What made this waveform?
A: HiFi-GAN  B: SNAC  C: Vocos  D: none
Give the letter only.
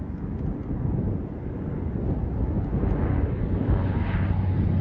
D